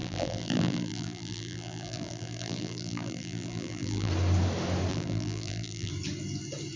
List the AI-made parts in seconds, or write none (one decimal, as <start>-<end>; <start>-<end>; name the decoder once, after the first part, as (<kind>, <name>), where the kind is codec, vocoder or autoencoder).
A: 0.0-4.1 (vocoder, BigVGAN v2); 4.9-5.9